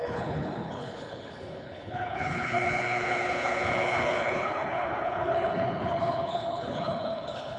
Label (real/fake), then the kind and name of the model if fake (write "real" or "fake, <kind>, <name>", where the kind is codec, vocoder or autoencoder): fake, codec, HILCodec